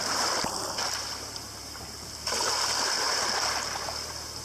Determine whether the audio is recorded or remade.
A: recorded